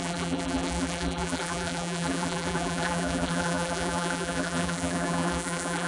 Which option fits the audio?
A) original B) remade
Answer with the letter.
B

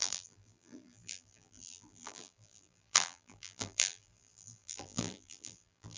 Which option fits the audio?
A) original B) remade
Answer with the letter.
B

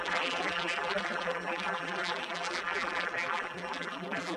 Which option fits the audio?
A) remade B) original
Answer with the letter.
A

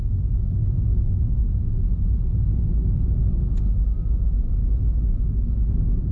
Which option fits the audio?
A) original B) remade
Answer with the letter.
A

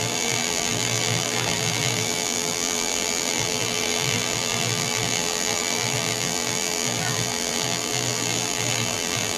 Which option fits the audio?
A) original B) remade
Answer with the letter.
B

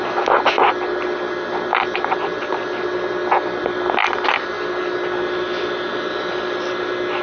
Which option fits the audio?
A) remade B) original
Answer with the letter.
B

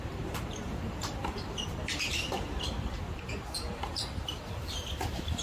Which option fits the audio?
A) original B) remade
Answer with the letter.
B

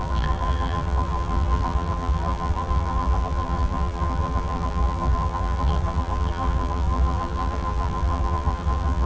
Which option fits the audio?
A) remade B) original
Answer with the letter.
A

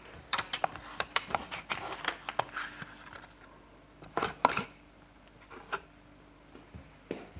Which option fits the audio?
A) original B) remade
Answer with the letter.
B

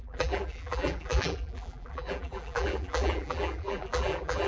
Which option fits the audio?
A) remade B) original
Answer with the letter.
A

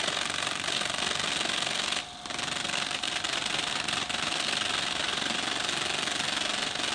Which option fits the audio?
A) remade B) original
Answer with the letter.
B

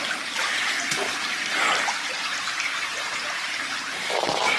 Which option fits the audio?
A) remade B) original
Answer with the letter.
A